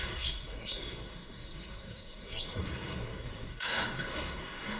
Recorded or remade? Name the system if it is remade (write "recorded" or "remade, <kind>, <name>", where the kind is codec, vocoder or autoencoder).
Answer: remade, codec, SNAC